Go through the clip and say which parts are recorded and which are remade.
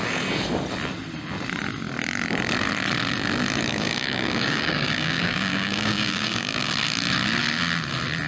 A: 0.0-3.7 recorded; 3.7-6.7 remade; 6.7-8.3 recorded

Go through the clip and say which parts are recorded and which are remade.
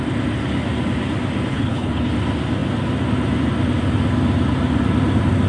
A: 0.0-1.5 recorded; 1.5-2.1 remade; 2.1-5.5 recorded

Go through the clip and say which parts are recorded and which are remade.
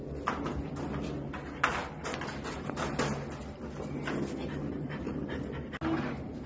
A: 0.0-4.4 recorded; 4.4-5.4 remade; 5.4-6.5 recorded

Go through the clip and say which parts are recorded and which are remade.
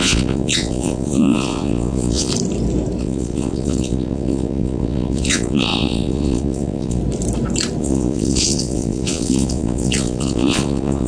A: 0.0-2.3 remade; 2.3-3.0 recorded; 3.0-7.0 remade; 7.0-7.8 recorded; 7.8-11.1 remade